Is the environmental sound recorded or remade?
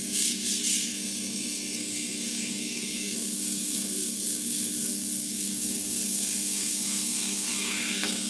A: remade